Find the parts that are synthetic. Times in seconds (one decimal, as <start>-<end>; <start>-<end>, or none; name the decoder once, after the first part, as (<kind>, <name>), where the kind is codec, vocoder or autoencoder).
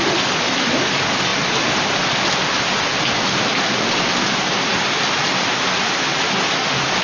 none